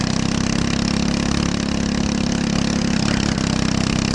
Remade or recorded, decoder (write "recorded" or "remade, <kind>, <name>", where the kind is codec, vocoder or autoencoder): recorded